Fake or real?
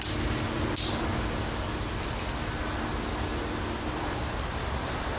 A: real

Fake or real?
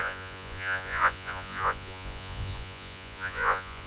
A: fake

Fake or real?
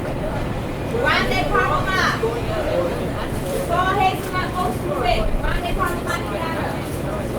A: fake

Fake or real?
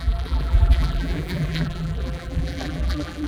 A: fake